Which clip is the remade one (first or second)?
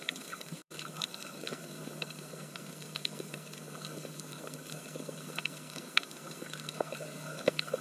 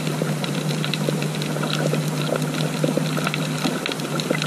first